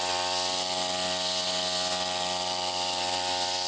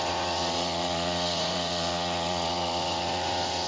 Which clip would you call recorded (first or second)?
first